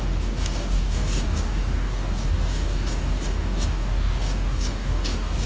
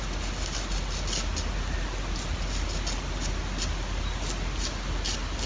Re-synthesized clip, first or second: first